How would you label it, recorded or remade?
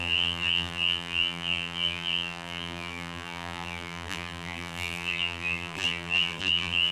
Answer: remade